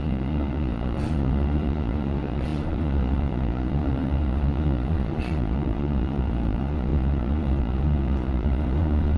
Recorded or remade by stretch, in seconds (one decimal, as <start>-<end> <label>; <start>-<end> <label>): 0.0-9.2 remade